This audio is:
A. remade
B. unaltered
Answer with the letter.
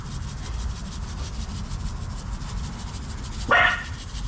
B